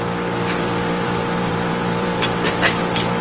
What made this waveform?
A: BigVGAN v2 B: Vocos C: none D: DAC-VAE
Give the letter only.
A